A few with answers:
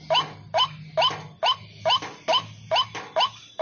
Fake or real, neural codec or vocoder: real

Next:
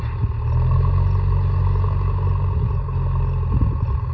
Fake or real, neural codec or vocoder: real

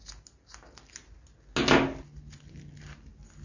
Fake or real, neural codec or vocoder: real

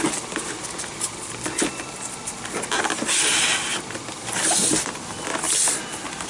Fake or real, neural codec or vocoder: real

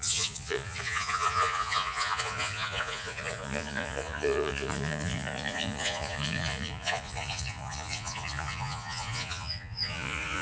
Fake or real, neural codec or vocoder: fake, vocoder, Vocos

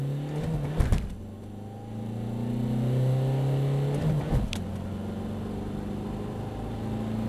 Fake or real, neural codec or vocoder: real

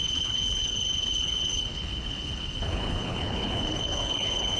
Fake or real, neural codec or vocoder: fake, codec, HILCodec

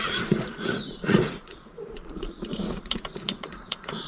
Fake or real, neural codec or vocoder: fake, vocoder, Vocos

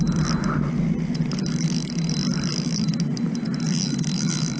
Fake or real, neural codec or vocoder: real